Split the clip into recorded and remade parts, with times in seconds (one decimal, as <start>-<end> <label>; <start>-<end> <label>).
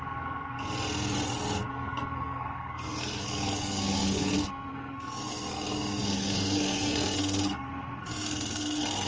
0.0-0.6 remade; 0.6-1.7 recorded; 1.7-9.1 remade